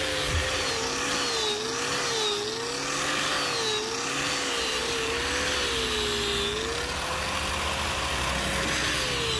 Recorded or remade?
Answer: recorded